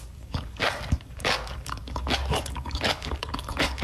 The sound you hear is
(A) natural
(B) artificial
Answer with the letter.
B